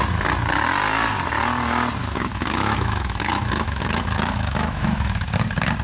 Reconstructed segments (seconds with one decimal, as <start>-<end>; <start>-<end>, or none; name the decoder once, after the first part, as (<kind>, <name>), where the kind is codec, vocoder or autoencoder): 2.0-5.3 (autoencoder, DAC-VAE)